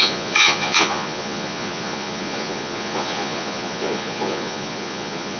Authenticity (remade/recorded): remade